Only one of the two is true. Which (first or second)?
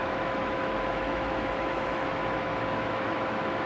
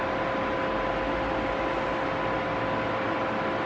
second